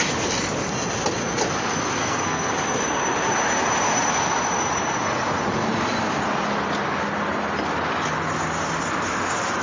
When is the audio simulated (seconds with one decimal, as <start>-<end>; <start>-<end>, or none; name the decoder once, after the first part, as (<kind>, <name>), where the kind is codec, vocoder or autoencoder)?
2.0-2.5 (codec, SNAC)